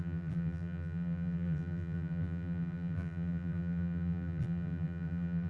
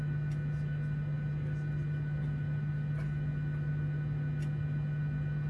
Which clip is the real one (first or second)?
second